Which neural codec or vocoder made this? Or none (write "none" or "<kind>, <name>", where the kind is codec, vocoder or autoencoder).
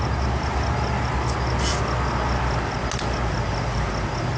none